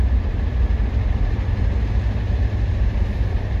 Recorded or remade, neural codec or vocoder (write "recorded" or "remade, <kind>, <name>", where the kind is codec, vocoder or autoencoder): recorded